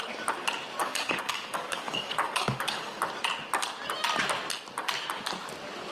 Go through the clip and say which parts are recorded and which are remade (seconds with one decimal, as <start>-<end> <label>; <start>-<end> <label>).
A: 0.0-0.8 recorded; 0.8-3.0 remade; 3.0-5.9 recorded